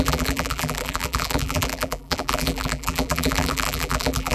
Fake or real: fake